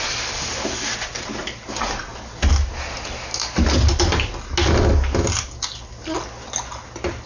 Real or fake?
real